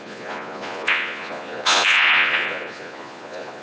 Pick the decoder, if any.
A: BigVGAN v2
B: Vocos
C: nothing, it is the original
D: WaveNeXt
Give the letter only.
B